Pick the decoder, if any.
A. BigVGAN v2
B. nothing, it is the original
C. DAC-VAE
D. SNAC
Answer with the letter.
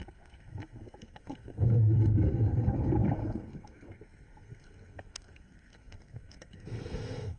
D